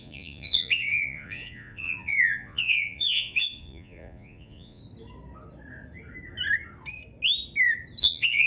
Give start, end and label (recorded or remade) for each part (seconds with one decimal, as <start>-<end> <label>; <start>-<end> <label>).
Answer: 0.0-4.8 remade; 4.8-8.0 recorded; 8.0-8.5 remade